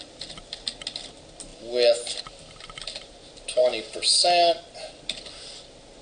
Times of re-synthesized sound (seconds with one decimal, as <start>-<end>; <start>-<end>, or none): none